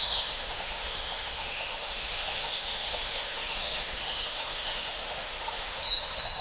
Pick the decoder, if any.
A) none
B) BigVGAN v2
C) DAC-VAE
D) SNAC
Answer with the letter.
C